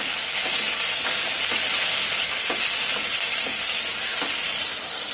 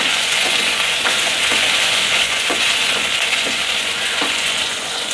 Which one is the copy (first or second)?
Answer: second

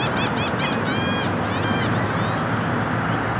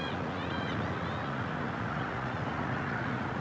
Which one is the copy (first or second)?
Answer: second